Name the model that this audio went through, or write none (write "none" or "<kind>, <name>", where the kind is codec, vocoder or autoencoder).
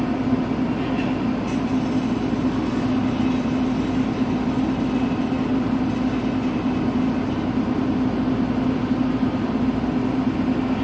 none